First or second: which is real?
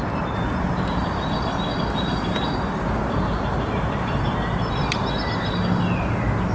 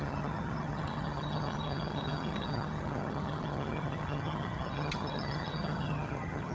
first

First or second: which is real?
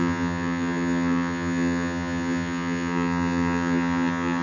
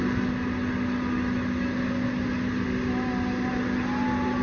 second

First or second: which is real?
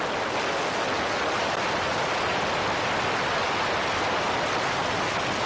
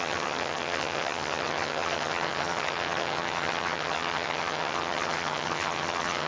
first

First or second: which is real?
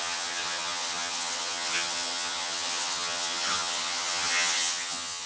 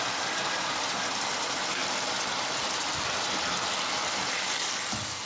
second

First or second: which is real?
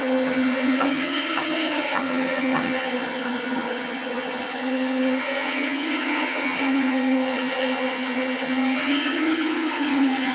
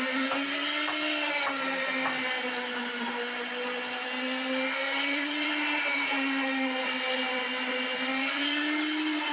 second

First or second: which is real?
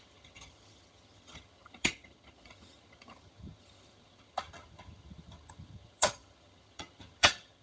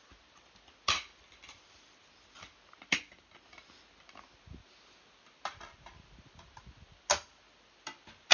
second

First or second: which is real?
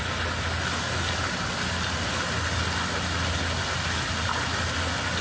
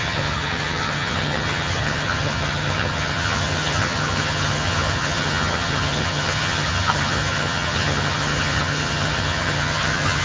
first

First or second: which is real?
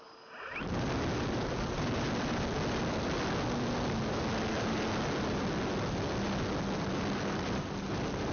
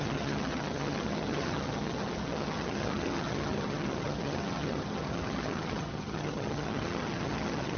first